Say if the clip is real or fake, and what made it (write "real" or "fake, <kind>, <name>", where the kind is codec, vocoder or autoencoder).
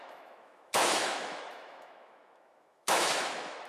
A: fake, autoencoder, DAC-VAE